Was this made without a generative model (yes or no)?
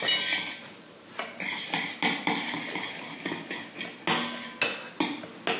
yes